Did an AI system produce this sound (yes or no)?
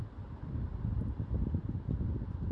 no